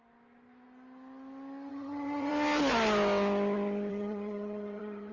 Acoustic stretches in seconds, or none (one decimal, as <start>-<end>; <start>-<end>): 0.0-1.7; 2.3-3.9